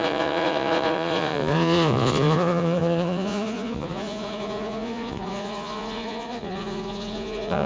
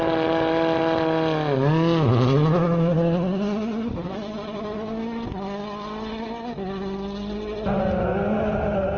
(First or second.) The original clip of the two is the second